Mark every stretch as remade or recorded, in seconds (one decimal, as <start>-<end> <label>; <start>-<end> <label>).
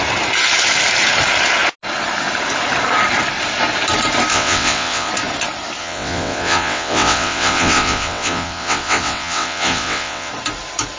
0.0-4.3 recorded; 4.3-5.1 remade; 5.1-5.8 recorded; 5.8-10.3 remade; 10.3-11.0 recorded